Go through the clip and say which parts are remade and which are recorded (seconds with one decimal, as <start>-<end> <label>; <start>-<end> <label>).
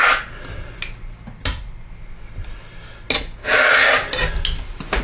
0.0-5.0 recorded